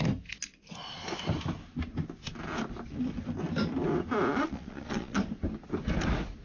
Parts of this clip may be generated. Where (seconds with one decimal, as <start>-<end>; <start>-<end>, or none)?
4.3-5.2